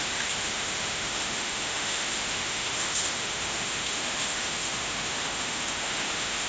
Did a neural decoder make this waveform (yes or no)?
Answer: yes